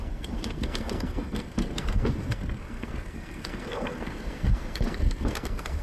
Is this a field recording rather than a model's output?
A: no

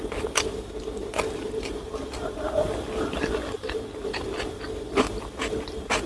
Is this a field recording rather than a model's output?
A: no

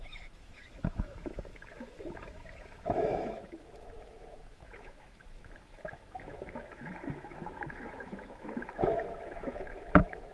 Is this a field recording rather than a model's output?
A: no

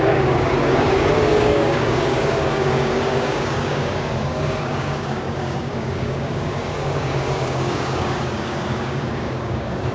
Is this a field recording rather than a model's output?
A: no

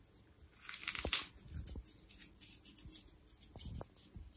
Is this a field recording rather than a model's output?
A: yes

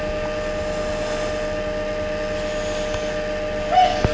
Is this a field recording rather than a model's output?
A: yes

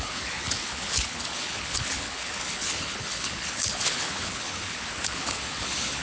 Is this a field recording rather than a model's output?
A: no